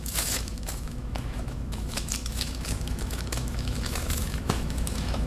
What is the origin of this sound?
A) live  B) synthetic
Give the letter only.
B